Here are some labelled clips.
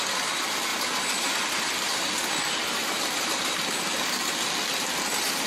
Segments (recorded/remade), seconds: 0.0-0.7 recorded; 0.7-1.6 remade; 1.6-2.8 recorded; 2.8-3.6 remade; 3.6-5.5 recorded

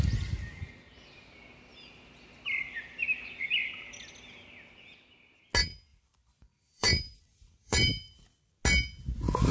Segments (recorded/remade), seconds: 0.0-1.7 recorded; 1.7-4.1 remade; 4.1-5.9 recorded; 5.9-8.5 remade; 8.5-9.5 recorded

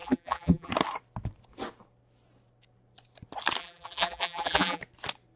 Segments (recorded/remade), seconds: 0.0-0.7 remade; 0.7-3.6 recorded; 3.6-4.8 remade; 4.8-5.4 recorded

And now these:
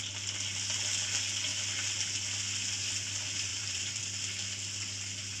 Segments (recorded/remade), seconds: 0.0-3.5 recorded; 3.5-4.0 remade; 4.0-5.4 recorded